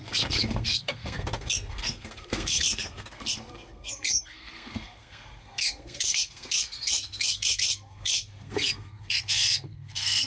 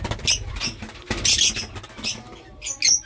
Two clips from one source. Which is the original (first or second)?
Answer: second